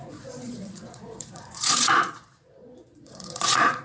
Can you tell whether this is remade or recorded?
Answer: remade